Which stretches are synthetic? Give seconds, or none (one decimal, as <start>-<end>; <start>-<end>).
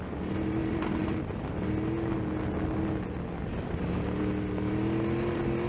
none